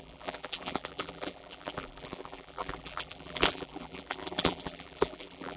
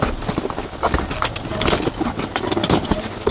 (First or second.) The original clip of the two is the second